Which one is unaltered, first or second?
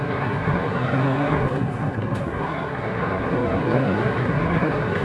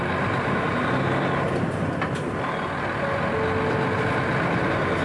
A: second